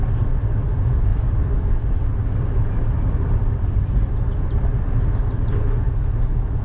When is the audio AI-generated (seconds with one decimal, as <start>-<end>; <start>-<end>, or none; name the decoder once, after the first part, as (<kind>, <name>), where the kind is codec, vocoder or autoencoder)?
1.1-4.8 (vocoder, BigVGAN v2)